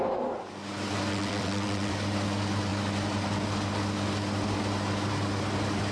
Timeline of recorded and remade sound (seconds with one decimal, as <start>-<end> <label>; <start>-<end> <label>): 0.0-1.1 recorded; 1.1-1.9 remade; 1.9-5.9 recorded